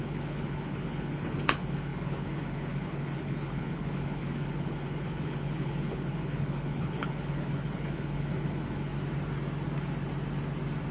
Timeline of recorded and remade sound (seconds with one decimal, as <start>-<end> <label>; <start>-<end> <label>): 0.0-8.9 remade; 8.9-10.9 recorded